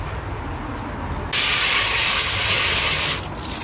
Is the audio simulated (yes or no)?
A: no